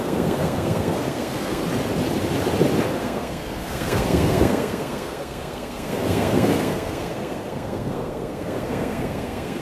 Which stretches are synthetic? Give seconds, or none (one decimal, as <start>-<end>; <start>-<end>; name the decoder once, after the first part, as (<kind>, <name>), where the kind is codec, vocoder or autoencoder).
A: 0.0-1.6 (codec, SNAC); 3.0-9.6